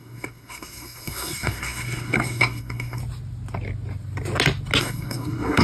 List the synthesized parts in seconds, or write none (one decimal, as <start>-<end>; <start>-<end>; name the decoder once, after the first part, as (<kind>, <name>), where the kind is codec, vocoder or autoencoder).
0.0-3.0 (codec, SNAC); 4.8-5.6